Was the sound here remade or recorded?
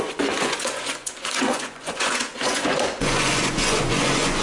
remade